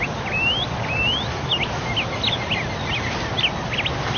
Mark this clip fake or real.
real